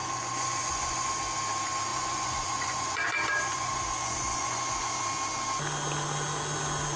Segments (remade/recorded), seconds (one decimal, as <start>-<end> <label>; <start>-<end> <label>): 0.0-1.1 remade; 1.1-1.9 recorded; 1.9-5.0 remade; 5.0-7.0 recorded